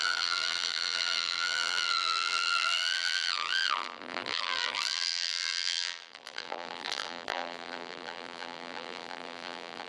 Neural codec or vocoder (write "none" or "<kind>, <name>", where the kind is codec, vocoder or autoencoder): vocoder, BigVGAN v2